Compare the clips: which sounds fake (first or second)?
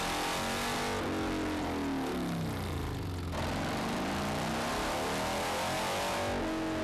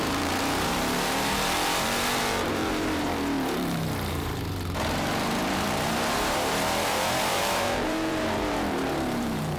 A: second